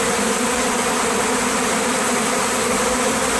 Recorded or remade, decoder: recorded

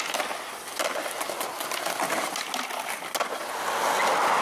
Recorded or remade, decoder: recorded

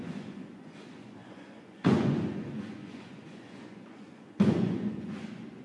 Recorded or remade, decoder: remade, vocoder, Vocos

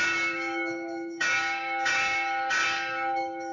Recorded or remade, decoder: remade, codec, DAC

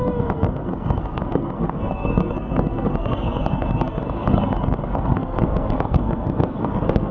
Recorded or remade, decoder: remade, codec, SNAC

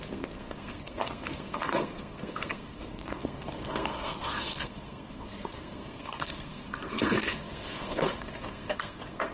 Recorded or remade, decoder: remade, codec, SNAC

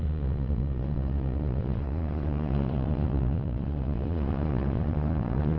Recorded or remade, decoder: remade, vocoder, Vocos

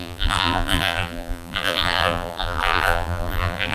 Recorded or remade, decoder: remade, vocoder, BigVGAN v2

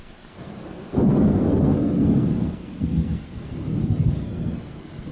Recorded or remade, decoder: remade, codec, SNAC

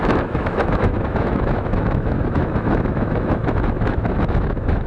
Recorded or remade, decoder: remade, autoencoder, DAC-VAE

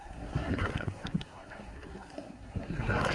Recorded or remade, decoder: remade, codec, SNAC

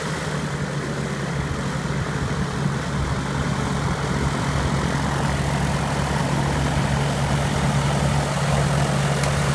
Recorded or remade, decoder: recorded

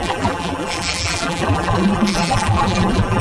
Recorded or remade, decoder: remade, vocoder, BigVGAN v2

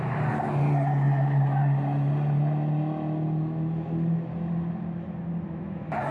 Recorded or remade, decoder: recorded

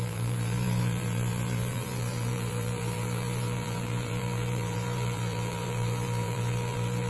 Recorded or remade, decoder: remade, vocoder, BigVGAN v2